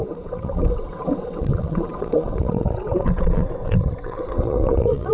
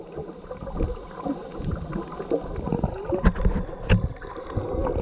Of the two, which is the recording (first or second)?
second